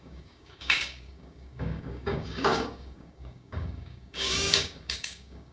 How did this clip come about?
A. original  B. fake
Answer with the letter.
B